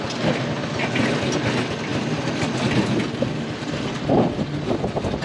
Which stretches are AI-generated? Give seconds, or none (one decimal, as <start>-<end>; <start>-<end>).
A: none